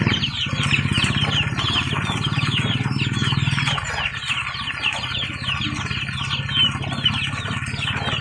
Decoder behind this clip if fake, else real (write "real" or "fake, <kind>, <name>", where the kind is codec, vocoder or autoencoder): real